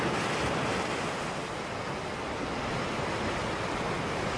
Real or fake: real